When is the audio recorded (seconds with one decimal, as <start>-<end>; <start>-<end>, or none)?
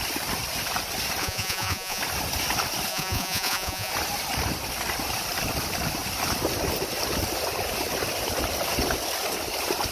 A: 0.0-1.2; 2.0-2.9; 3.9-9.9